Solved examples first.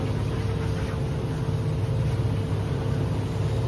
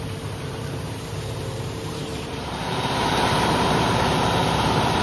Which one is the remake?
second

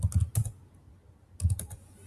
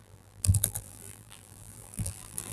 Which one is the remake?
second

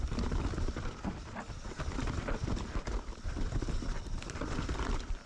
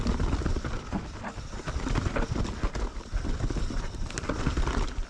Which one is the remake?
first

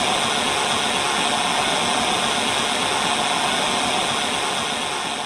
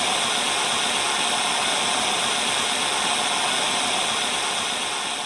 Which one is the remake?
second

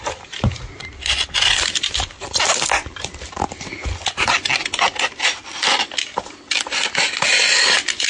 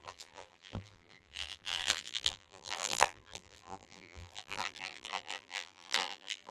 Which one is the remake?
second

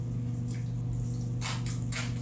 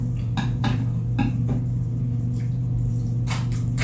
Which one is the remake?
second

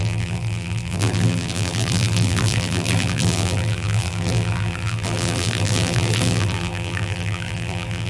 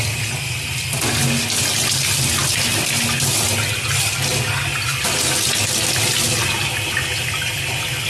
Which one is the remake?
first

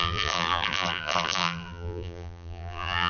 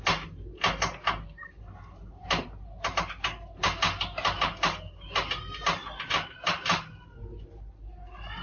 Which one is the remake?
first